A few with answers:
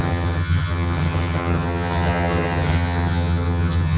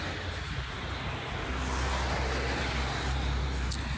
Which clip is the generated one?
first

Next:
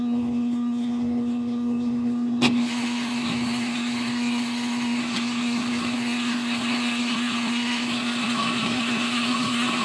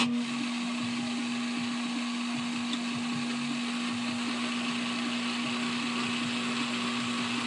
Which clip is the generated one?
first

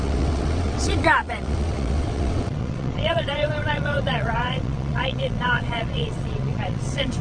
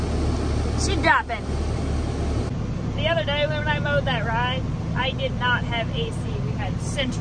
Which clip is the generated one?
first